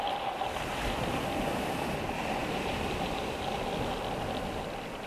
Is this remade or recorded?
recorded